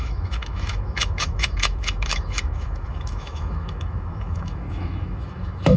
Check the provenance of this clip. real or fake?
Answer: fake